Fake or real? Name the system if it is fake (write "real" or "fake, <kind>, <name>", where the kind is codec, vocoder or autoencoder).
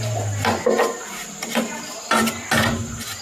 real